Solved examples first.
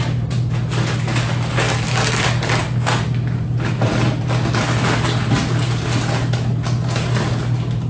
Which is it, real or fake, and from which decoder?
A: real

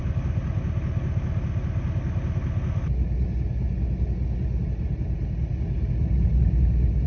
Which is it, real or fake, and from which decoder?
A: real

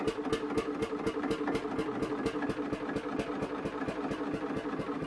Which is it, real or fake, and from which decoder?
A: real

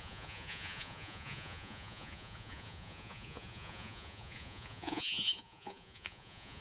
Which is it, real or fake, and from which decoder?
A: fake, vocoder, Vocos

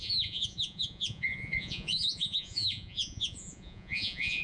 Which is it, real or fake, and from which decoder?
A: fake, vocoder, Vocos